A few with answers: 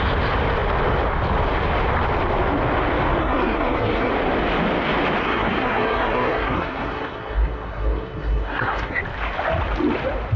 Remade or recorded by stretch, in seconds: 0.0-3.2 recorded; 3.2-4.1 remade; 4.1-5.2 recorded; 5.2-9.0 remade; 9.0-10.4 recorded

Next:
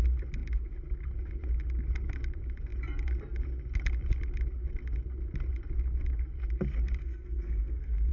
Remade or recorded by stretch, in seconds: 0.0-7.0 recorded; 7.0-8.1 remade

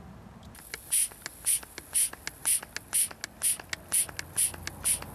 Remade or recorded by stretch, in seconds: 0.0-5.1 recorded

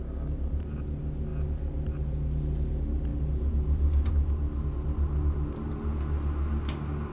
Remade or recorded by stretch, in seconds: 0.0-7.1 recorded

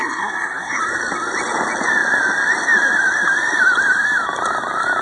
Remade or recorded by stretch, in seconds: 0.0-0.8 remade; 0.8-5.0 recorded

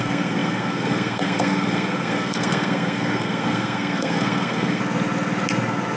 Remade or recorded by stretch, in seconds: 0.0-4.8 remade; 4.8-6.0 recorded